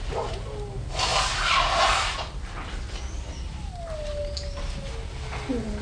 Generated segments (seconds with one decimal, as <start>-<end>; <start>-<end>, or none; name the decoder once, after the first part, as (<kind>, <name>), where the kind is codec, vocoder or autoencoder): none